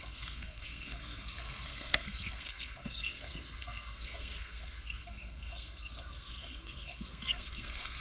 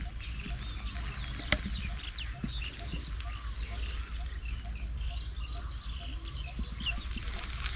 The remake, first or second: first